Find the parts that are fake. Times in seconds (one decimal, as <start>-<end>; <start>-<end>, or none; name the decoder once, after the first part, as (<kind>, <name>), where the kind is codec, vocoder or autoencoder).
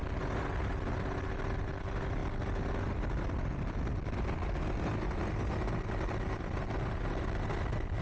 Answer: none